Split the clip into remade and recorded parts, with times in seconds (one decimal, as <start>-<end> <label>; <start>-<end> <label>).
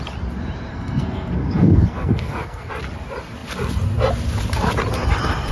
0.0-0.7 recorded; 0.7-2.7 remade; 2.7-5.5 recorded